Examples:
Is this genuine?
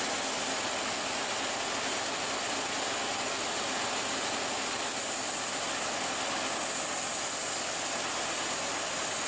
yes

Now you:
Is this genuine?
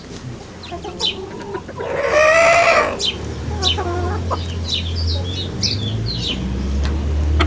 yes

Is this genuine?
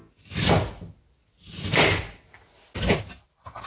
yes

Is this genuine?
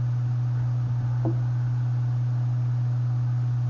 yes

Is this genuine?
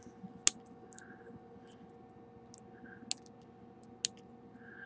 yes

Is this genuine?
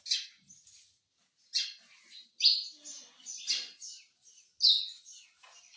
yes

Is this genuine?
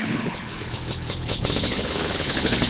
no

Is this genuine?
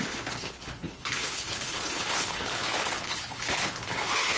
no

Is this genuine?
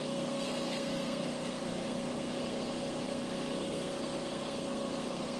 no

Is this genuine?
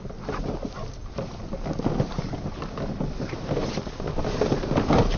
yes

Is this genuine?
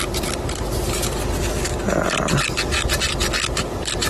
yes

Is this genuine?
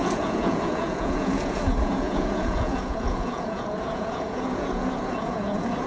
no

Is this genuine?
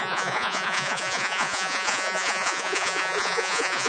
no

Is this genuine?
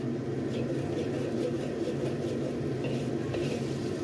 yes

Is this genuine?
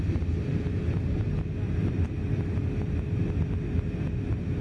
yes